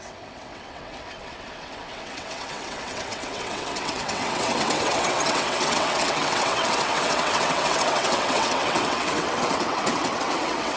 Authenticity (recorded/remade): remade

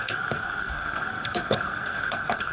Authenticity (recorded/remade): remade